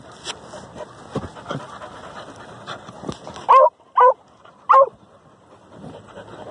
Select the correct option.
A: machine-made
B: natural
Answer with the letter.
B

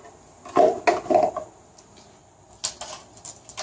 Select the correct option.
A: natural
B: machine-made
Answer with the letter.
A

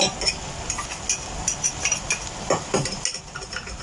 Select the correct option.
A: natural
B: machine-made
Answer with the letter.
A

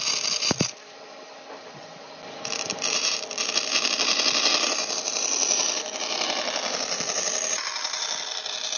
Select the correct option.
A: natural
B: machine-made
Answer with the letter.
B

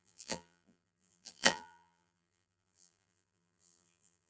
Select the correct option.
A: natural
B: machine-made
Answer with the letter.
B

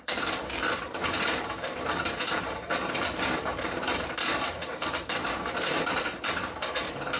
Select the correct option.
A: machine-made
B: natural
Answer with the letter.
A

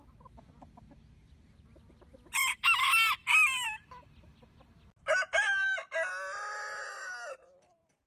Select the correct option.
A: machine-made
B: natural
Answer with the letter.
B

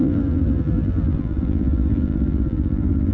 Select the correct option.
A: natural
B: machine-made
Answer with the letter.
B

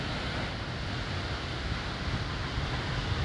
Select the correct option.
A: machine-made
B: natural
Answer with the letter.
B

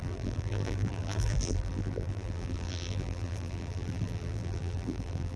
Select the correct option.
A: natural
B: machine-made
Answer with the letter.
B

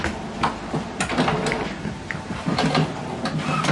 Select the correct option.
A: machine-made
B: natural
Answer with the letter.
B